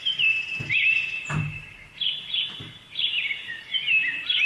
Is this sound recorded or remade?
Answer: remade